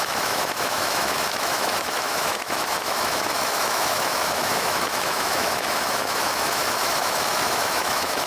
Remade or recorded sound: remade